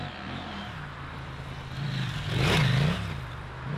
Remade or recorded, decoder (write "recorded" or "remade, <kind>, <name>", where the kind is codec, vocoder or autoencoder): recorded